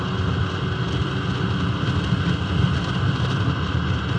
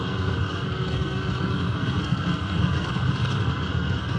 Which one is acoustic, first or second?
first